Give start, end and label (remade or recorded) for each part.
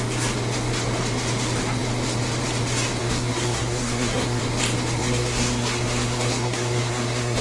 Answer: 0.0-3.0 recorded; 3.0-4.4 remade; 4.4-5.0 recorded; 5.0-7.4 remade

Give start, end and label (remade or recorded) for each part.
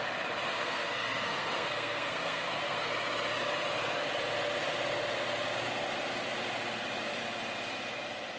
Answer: 0.0-0.5 recorded; 0.5-2.9 remade; 2.9-8.4 recorded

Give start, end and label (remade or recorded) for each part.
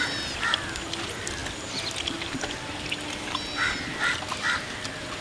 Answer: 0.0-5.2 recorded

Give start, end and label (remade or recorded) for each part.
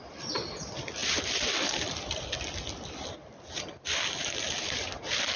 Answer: 0.0-5.4 recorded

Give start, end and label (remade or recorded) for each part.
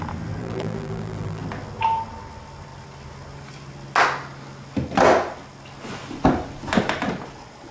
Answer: 0.0-0.4 recorded; 0.4-1.4 remade; 1.4-7.7 recorded